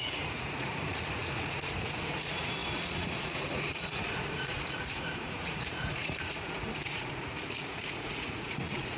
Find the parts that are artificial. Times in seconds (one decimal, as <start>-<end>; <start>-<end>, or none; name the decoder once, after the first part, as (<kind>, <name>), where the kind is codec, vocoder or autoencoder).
0.0-9.0 (vocoder, Vocos)

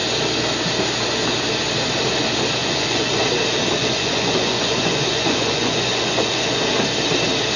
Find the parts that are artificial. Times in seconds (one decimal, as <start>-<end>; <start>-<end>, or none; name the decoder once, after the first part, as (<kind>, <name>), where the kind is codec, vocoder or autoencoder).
2.6-3.2 (vocoder, Vocos); 3.8-6.6

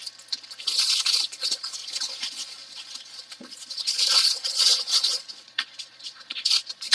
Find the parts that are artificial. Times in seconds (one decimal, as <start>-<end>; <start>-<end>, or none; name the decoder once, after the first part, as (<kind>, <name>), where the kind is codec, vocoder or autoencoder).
0.6-6.9 (vocoder, Vocos)